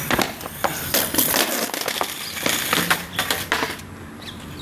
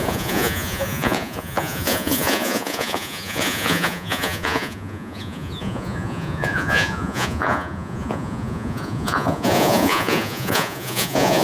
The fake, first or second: second